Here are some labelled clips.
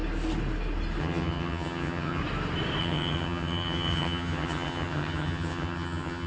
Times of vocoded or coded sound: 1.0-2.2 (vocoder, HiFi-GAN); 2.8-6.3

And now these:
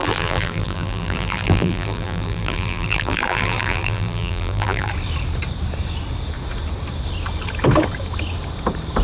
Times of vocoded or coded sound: 0.0-4.9 (vocoder, BigVGAN v2)

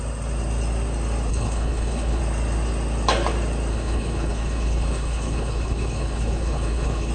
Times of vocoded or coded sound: 1.3-2.2 (codec, HILCodec); 3.7-7.1

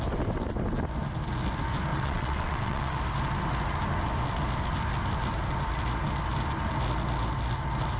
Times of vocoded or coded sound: 1.9-3.0 (vocoder, WaveNeXt)

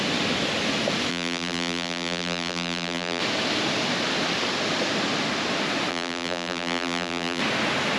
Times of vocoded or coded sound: 1.1-3.2 (vocoder, BigVGAN v2); 5.9-7.4

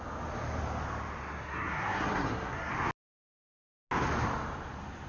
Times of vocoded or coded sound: 1.2-2.7 (codec, SNAC)

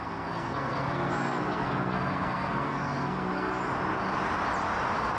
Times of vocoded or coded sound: 0.0-3.6 (codec, SNAC)